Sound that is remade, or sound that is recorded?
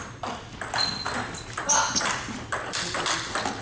recorded